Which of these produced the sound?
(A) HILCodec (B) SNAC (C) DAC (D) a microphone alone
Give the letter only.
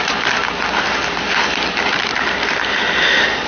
D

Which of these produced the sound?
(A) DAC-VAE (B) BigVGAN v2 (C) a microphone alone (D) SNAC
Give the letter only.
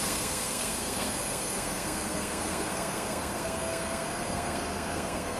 D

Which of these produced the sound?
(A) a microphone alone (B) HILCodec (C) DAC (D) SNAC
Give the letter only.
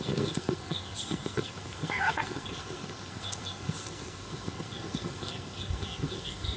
D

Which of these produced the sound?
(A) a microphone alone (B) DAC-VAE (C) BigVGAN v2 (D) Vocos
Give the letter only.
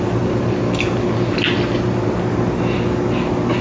A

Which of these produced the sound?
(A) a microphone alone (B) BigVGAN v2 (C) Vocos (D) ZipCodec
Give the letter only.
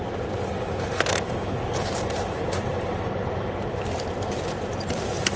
B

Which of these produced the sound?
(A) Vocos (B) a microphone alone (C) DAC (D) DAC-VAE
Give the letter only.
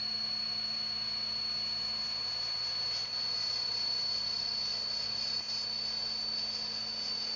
B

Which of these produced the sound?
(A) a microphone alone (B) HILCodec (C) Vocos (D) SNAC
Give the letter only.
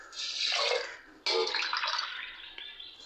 A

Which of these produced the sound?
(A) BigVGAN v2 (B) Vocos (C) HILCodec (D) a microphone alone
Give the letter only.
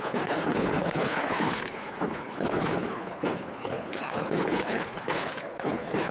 C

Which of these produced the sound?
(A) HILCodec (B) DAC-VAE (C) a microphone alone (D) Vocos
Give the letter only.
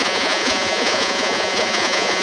D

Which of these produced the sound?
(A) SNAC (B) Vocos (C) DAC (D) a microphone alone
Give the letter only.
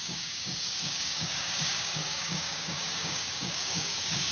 C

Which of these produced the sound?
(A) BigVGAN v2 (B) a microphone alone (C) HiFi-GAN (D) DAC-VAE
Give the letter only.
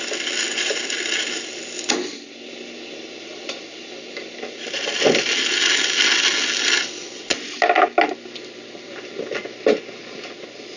B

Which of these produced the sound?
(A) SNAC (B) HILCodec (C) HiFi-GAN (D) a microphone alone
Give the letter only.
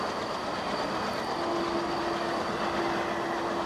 D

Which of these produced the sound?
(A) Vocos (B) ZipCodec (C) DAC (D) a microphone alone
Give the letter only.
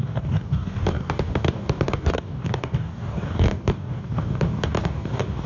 C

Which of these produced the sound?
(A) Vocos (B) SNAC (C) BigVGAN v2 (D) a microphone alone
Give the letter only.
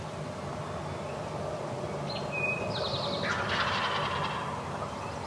D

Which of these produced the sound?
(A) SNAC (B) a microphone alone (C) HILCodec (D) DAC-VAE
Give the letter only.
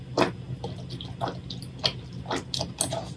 B